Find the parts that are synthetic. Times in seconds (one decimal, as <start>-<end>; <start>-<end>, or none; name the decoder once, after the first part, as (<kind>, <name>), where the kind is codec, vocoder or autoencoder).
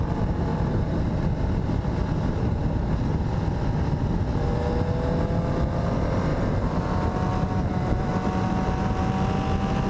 0.5-1.1 (vocoder, BigVGAN v2); 6.3-6.8